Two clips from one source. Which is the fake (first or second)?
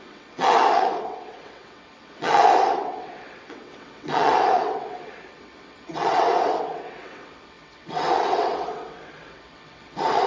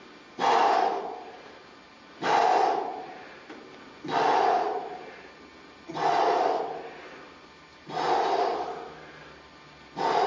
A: first